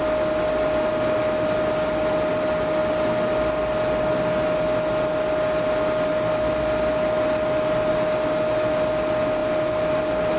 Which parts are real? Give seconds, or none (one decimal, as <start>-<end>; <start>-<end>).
0.0-10.4